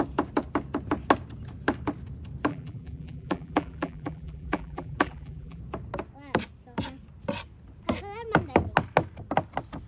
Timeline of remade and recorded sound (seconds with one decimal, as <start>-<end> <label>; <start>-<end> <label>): 0.0-2.5 recorded; 2.5-5.6 remade; 5.6-9.9 recorded